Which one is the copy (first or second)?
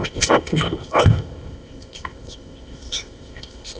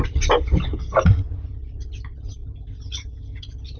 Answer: first